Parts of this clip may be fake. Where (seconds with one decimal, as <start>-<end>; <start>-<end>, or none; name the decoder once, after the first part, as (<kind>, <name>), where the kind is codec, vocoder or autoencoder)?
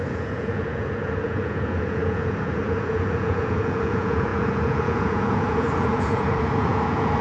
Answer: 0.0-7.2 (vocoder, Vocos)